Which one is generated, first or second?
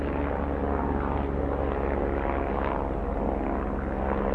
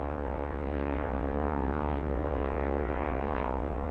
second